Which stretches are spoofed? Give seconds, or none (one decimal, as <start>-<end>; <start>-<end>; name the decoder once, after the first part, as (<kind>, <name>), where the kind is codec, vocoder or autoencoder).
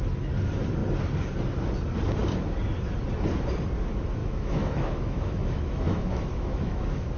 4.2-7.2 (autoencoder, DAC-VAE)